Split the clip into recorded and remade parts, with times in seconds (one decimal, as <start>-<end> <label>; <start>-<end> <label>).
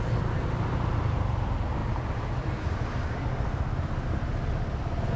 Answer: 0.0-5.2 recorded